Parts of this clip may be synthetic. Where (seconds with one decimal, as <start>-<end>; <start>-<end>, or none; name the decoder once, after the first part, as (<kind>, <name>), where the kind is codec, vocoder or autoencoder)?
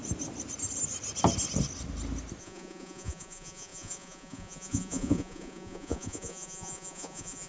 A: 2.4-7.5 (vocoder, Vocos)